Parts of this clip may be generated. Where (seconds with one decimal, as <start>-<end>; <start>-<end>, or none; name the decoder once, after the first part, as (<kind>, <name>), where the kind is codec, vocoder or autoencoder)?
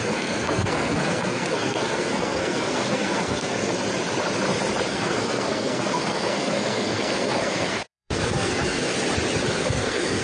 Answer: 0.0-3.7 (codec, SNAC); 4.9-8.9; 9.5-10.2